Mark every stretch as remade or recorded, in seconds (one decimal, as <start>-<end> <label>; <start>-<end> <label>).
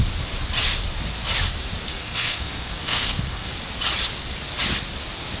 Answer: 0.0-1.9 recorded; 1.9-3.5 remade; 3.5-5.4 recorded